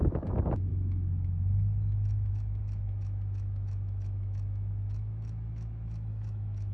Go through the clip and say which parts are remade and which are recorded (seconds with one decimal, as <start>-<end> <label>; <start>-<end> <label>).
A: 0.0-6.7 remade